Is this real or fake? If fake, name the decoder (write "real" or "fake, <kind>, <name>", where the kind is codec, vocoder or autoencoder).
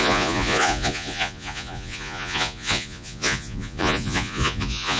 fake, vocoder, Vocos